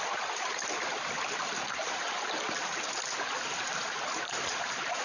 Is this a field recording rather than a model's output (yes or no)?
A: yes